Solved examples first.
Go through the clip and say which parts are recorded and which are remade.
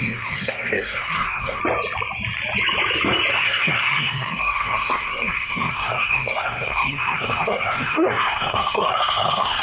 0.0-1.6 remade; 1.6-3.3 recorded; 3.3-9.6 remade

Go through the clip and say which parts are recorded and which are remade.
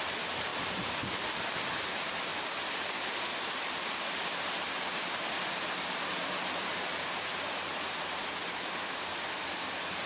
0.0-0.5 recorded; 0.5-1.7 remade; 1.7-2.3 recorded; 2.3-7.3 remade; 7.3-10.1 recorded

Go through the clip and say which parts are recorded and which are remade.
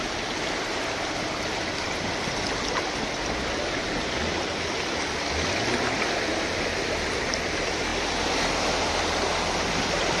0.0-10.2 recorded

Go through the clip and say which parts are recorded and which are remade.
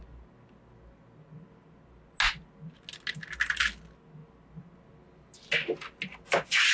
0.0-6.7 recorded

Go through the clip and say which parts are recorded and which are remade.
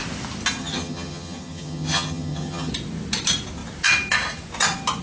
0.0-0.6 recorded; 0.6-2.7 remade; 2.7-5.0 recorded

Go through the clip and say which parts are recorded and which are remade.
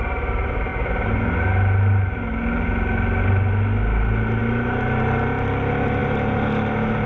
0.0-7.1 recorded